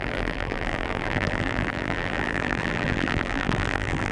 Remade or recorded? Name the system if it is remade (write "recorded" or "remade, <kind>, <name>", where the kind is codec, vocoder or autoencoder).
remade, vocoder, BigVGAN v2